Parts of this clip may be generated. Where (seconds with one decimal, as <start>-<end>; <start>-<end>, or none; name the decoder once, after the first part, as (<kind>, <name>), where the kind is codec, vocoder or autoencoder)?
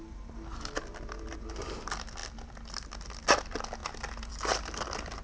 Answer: none